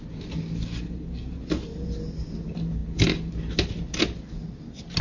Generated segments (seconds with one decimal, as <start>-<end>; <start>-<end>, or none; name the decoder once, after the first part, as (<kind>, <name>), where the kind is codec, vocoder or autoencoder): none